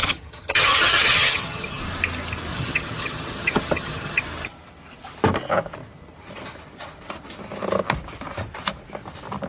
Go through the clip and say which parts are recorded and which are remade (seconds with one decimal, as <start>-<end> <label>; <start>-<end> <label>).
0.0-1.8 remade; 1.8-2.5 recorded; 2.5-4.2 remade; 4.2-9.5 recorded